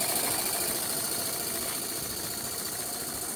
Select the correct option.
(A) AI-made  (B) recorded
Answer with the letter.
A